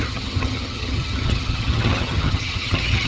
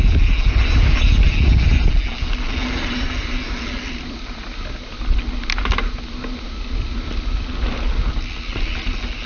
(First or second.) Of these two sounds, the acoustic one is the second